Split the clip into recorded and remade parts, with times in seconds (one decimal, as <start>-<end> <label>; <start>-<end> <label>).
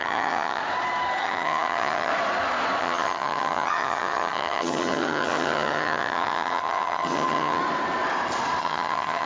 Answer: 0.0-0.6 remade; 0.6-1.2 recorded; 1.2-2.1 remade; 2.1-2.8 recorded; 2.8-7.6 remade; 7.6-8.6 recorded; 8.6-9.3 remade